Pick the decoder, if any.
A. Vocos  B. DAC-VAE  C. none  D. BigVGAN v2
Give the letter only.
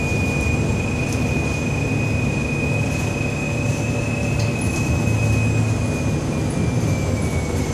C